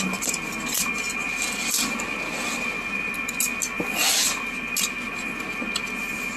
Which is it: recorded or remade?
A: recorded